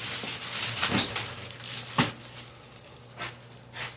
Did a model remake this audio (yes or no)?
no